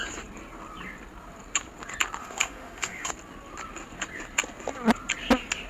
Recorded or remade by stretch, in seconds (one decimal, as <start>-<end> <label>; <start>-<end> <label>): 0.0-2.2 recorded; 2.2-3.1 remade; 3.1-5.7 recorded